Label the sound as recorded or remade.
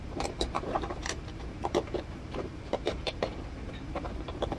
remade